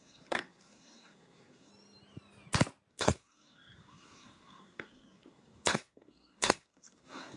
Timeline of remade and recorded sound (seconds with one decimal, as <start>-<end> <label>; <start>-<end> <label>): 0.0-1.7 remade; 1.7-2.9 recorded; 2.9-7.4 remade